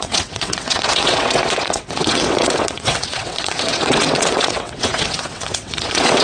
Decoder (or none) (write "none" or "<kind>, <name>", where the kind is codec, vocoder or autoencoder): vocoder, WaveNeXt